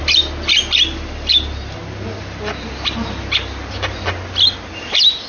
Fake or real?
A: real